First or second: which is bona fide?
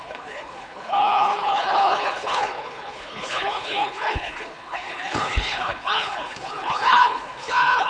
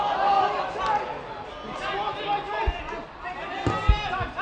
second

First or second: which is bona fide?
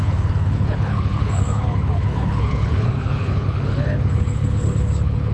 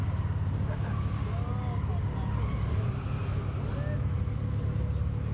second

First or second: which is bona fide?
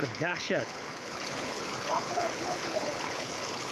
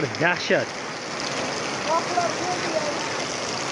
second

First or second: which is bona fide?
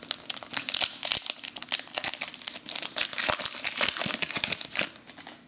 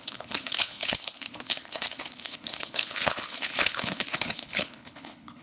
first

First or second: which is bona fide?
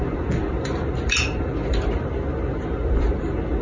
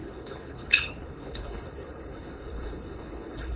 first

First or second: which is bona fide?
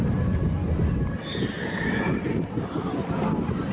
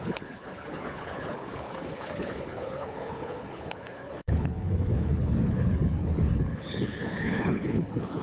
first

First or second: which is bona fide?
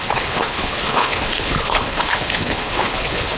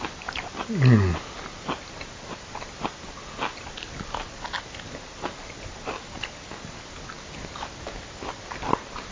second